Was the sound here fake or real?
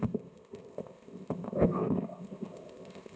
fake